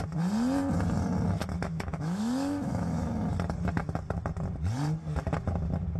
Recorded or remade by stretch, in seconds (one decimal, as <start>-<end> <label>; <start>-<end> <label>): 0.0-1.4 recorded; 1.4-3.1 remade; 3.1-6.0 recorded